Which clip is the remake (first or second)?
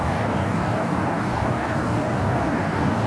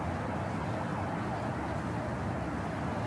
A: first